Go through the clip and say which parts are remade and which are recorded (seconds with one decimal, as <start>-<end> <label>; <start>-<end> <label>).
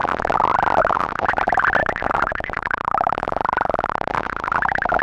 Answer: 0.0-1.8 recorded; 1.8-4.1 remade; 4.1-5.0 recorded